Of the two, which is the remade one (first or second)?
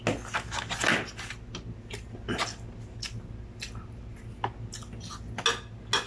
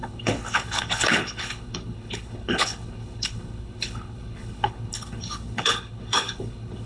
second